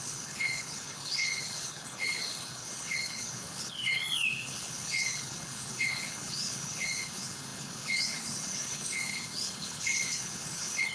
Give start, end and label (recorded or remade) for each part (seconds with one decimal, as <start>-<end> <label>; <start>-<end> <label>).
0.0-10.9 remade